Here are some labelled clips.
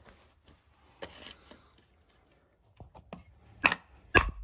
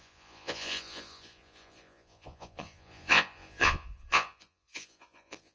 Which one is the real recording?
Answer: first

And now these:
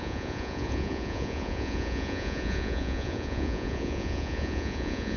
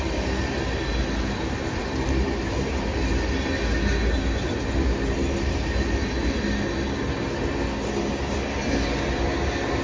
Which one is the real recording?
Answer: second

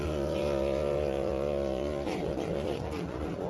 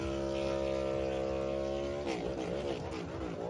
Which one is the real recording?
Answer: second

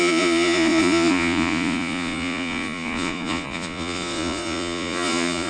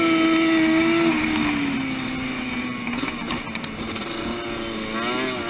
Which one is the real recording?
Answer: second